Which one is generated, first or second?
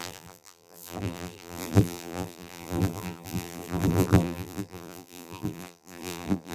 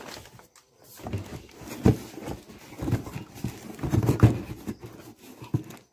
first